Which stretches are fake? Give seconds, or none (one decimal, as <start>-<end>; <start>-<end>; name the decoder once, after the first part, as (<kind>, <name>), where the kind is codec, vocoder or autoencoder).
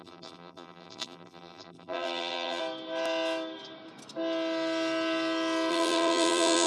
0.0-2.6 (vocoder, BigVGAN v2); 5.7-6.7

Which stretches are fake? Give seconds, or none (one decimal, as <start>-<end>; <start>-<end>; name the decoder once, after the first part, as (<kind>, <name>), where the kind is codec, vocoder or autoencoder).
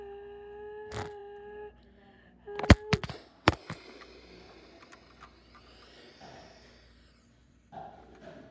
7.4-8.5 (vocoder, BigVGAN v2)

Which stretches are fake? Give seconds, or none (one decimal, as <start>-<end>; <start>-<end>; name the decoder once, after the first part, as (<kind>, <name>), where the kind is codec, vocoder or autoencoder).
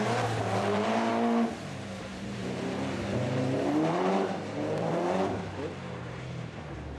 0.0-1.1 (vocoder, BigVGAN v2); 1.6-7.0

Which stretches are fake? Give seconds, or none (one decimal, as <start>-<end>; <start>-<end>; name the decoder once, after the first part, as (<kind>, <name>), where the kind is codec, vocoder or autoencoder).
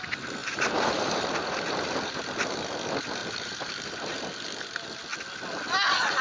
0.4-2.2 (vocoder, BigVGAN v2); 3.2-4.2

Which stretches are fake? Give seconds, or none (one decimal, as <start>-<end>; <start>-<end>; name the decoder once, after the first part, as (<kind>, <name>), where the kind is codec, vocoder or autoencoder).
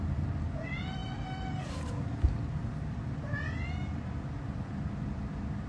0.0-1.0 (vocoder, BigVGAN v2); 4.4-5.7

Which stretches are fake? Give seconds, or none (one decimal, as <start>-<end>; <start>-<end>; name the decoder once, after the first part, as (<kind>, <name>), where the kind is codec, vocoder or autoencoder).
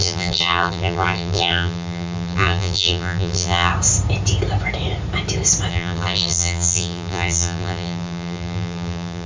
0.0-3.7 (vocoder, BigVGAN v2); 5.7-9.3